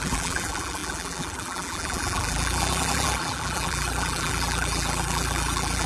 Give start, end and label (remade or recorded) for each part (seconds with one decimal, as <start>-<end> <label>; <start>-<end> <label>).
0.0-5.9 remade